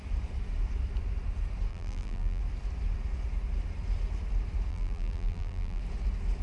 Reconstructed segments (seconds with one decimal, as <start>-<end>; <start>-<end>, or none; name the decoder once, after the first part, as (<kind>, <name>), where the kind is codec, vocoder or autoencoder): 1.7-2.4 (vocoder, BigVGAN v2); 4.7-5.8